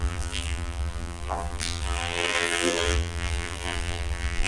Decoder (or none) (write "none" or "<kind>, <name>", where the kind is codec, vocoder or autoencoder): vocoder, BigVGAN v2